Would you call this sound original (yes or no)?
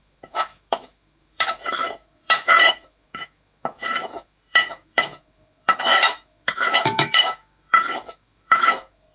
no